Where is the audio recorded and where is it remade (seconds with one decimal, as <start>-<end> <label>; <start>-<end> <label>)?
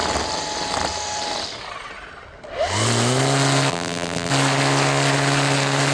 0.0-3.7 recorded; 3.7-4.3 remade; 4.3-5.9 recorded